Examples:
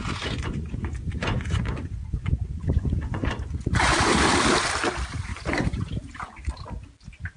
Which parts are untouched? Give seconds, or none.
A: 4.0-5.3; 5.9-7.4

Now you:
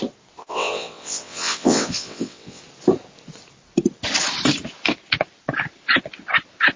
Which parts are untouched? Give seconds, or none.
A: 0.0-0.4; 2.6-6.8

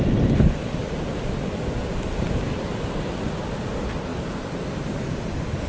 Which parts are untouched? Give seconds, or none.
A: 0.0-5.7

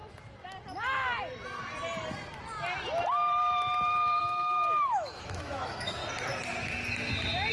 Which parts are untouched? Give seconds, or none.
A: 0.0-4.2; 6.0-7.5

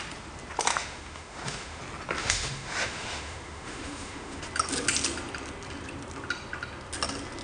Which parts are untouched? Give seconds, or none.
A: 0.0-0.7; 1.8-2.2; 4.4-7.4

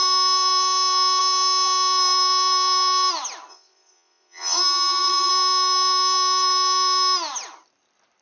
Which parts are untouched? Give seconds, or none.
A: 0.0-3.5; 5.3-8.2

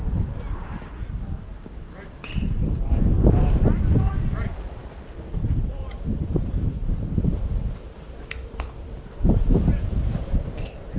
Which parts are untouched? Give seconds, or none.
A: 4.8-5.3

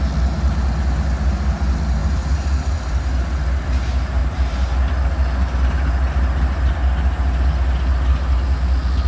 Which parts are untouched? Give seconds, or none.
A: 0.0-2.0; 3.0-4.2; 4.7-9.1